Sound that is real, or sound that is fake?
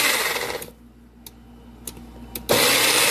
real